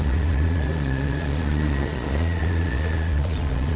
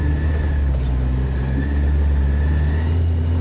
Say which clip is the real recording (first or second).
second